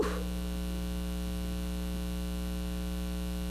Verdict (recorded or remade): recorded